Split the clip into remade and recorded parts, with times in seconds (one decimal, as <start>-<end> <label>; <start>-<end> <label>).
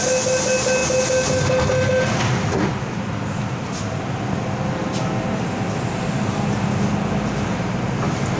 0.0-8.4 recorded